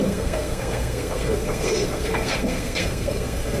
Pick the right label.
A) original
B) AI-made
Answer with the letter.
B